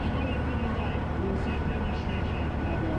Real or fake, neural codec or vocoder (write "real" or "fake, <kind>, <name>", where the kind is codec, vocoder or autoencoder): real